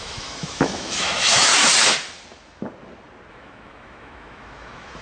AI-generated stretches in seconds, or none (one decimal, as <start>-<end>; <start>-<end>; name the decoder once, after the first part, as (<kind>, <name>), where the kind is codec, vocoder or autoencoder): 0.0-1.5 (autoencoder, DAC-VAE); 3.3-5.0